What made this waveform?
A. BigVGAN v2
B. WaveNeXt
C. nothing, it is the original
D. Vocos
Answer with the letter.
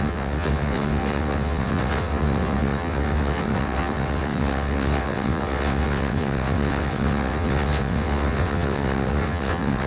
B